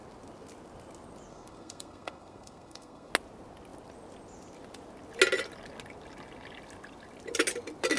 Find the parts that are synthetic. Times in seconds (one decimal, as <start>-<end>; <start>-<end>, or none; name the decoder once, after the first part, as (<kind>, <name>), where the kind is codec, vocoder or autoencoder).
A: 1.3-3.1 (codec, SNAC)